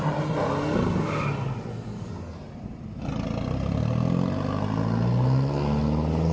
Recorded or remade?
recorded